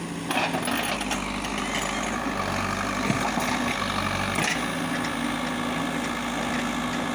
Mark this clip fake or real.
real